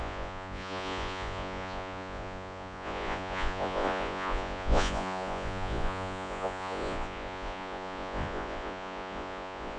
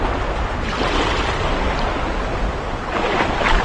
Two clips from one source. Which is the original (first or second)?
second